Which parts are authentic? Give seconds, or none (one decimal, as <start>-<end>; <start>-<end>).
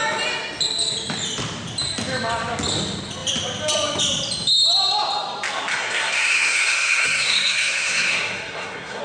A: 0.0-5.7